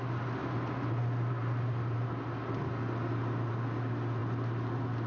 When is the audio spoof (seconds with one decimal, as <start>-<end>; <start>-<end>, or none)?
none